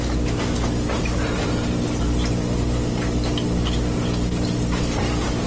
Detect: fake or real real